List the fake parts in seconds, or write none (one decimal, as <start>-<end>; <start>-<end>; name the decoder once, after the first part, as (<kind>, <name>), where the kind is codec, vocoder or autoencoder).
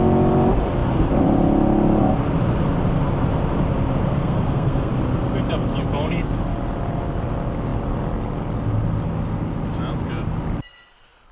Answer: 4.1-4.9 (codec, SNAC)